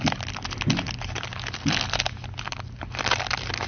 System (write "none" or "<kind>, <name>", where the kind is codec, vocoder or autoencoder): none